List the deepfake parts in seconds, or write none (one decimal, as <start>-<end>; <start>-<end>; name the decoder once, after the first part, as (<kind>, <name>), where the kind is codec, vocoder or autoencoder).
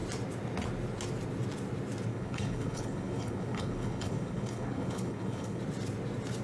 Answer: 2.1-5.6 (codec, HILCodec)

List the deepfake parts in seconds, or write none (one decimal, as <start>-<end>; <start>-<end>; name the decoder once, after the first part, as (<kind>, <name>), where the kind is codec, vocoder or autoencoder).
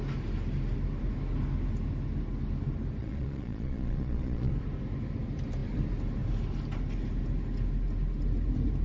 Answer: 3.0-4.5 (vocoder, Vocos)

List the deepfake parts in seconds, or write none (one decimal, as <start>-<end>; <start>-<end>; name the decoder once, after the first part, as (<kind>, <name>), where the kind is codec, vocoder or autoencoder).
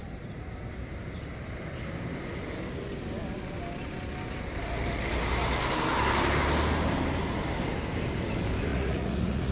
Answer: 8.7-9.5 (vocoder, Vocos)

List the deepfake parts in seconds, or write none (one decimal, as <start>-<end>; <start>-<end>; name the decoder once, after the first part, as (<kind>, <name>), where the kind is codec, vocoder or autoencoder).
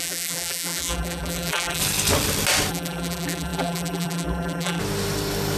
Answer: 0.0-1.8 (vocoder, BigVGAN v2); 2.7-4.8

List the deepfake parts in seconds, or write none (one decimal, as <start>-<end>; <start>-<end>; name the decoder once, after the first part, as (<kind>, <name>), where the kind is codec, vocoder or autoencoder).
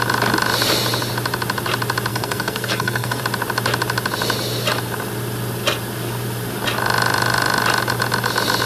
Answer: 2.1-3.2 (codec, SNAC)